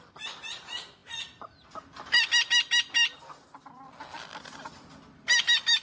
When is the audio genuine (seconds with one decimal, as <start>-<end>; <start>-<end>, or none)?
0.0-5.8